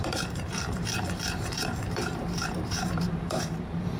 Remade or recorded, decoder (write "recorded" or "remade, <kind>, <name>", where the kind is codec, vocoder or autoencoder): remade, vocoder, BigVGAN v2